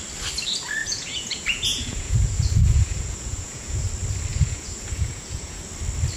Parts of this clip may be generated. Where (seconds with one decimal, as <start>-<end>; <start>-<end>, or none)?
0.8-3.8; 4.3-5.7

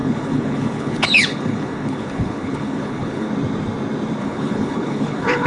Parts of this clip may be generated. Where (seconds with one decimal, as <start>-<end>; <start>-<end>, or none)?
0.0-3.3; 4.2-5.5

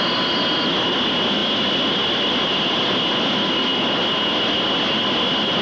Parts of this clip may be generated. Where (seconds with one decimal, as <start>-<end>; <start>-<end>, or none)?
none